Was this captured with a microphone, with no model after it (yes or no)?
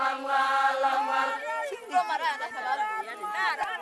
yes